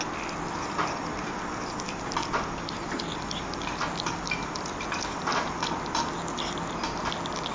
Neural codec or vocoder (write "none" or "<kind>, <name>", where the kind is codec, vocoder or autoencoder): none